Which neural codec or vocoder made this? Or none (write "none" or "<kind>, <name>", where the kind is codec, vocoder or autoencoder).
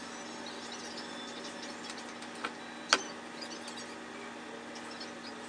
none